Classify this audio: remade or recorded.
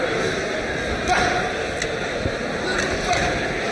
recorded